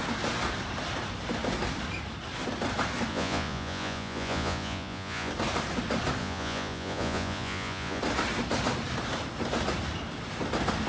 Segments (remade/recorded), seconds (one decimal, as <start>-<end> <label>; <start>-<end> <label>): 0.0-3.1 recorded; 3.1-5.3 remade; 5.3-6.2 recorded; 6.2-8.0 remade; 8.0-10.9 recorded